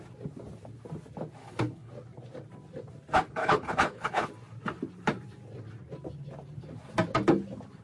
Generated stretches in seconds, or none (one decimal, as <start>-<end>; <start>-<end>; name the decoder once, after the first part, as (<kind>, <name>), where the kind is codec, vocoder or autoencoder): 1.4-1.9 (codec, HILCodec); 3.4-4.3

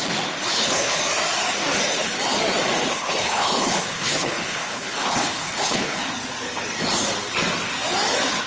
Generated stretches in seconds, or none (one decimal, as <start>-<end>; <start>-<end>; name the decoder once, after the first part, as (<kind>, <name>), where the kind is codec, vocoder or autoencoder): 0.5-1.0 (codec, HILCodec); 2.8-6.0

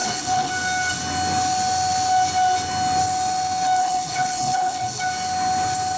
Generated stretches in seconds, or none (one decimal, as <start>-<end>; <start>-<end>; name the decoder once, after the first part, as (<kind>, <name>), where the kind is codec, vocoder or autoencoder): 0.0-0.5 (codec, HILCodec); 3.8-5.0

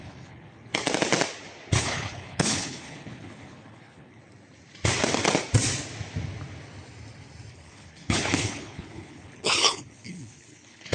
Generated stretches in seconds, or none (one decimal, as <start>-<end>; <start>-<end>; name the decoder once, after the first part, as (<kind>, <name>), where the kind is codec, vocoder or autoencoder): 0.0-0.7 (codec, HILCodec); 1.8-4.2; 7.5-10.9